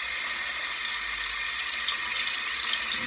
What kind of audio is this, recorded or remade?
recorded